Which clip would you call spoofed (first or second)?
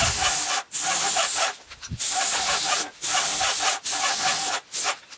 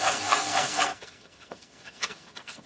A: second